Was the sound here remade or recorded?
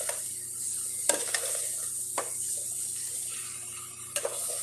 recorded